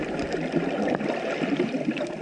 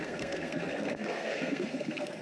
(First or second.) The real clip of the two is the first